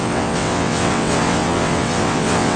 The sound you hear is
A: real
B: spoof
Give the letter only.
B